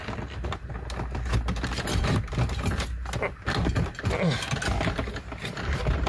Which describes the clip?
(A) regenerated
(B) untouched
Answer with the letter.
B